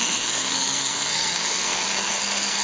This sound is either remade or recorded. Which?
remade